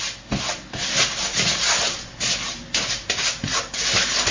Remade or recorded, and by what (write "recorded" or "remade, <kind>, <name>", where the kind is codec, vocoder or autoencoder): recorded